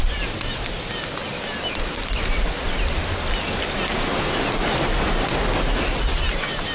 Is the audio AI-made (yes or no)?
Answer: no